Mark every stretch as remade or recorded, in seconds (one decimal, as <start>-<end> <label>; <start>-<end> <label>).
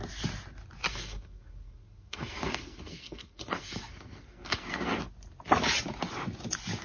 0.0-0.9 recorded; 0.9-5.0 remade; 5.0-6.8 recorded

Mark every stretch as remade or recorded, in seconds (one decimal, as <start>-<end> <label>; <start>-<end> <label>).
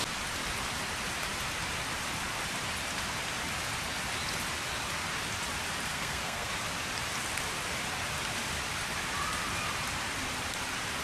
0.0-5.9 recorded; 5.9-6.5 remade; 6.5-11.0 recorded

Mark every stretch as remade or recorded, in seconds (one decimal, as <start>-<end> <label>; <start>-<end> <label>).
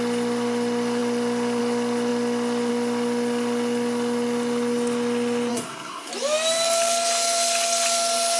0.0-5.5 recorded; 5.5-6.1 remade; 6.1-8.4 recorded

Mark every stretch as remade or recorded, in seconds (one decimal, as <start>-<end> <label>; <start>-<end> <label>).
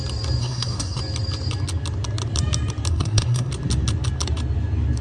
0.0-0.4 recorded; 0.4-1.0 remade; 1.0-2.9 recorded; 2.9-3.5 remade; 3.5-5.0 recorded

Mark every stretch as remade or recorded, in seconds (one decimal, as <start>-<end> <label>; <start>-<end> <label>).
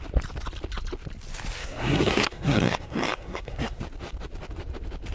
0.0-1.6 recorded; 1.6-3.8 remade; 3.8-5.1 recorded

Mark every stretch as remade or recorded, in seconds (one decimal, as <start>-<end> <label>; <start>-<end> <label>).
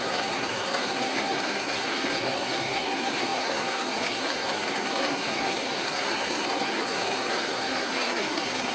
0.0-8.7 remade